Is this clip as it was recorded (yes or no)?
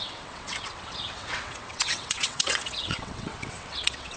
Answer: no